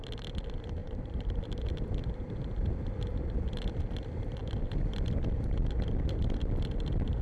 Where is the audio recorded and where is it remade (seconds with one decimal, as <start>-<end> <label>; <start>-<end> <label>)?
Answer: 0.0-0.8 recorded; 0.8-1.7 remade; 1.7-7.2 recorded